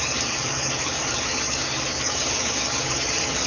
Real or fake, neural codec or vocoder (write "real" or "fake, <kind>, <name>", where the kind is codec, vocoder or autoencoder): fake, codec, DAC